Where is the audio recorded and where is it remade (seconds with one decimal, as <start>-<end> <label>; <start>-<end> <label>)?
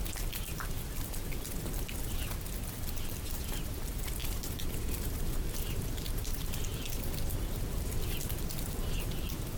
0.0-6.7 remade; 6.7-8.6 recorded; 8.6-9.6 remade